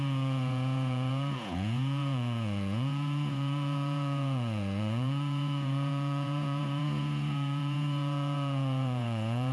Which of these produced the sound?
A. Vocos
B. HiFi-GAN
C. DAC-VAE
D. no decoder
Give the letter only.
A